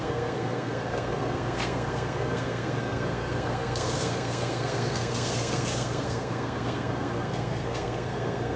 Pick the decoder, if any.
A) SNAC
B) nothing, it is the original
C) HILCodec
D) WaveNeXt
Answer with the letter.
A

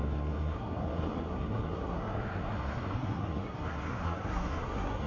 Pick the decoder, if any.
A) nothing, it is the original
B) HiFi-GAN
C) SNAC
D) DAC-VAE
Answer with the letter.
C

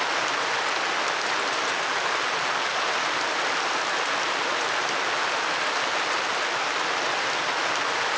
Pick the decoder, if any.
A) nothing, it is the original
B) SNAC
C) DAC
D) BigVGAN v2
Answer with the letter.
A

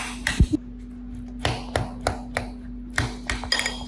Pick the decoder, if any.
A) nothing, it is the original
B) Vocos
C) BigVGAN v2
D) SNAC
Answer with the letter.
A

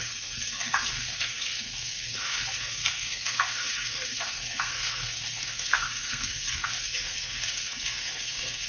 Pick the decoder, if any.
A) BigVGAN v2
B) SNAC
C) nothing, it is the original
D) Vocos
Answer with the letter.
B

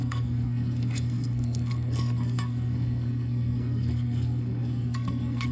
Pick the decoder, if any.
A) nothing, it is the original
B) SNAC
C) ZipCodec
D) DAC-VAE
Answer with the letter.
B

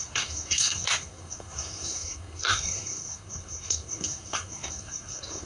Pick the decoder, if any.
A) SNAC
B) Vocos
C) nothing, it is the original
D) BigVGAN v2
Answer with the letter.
A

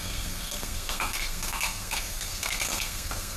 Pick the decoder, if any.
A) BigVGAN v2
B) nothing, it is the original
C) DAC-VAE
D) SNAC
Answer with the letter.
D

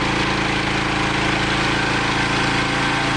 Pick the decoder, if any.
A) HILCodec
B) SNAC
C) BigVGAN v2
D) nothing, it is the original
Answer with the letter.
D